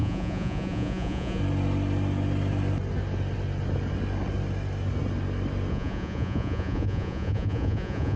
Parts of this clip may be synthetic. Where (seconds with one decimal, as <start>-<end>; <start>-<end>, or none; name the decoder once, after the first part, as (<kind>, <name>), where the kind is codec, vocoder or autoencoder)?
0.0-1.4 (vocoder, Vocos); 5.7-8.2